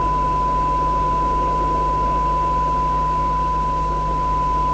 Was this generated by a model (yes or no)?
no